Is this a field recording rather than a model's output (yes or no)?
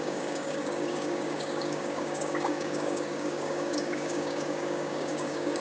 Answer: no